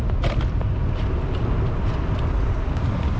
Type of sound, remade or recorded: recorded